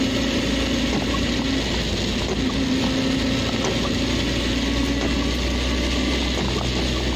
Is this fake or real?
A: real